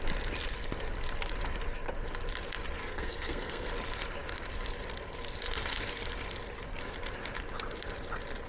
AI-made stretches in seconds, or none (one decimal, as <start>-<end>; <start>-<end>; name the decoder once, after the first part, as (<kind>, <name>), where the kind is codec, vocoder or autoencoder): 2.8-3.7 (codec, SNAC)